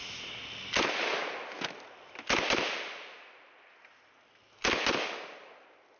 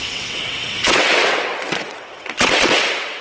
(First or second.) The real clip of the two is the first